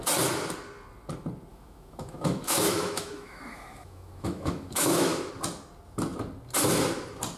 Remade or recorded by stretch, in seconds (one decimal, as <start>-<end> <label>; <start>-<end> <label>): 0.0-1.5 recorded; 1.5-5.3 remade; 5.3-7.4 recorded